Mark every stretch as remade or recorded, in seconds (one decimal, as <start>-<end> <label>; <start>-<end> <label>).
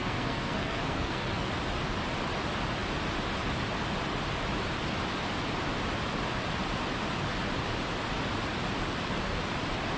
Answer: 0.0-1.5 remade; 1.5-10.0 recorded